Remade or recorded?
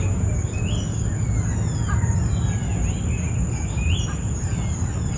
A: recorded